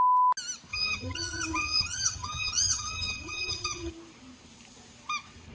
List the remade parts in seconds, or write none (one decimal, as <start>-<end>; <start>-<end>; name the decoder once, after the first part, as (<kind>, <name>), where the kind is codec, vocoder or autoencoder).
0.7-3.9 (vocoder, HiFi-GAN)